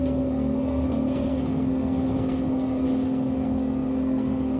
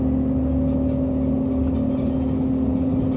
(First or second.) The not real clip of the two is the first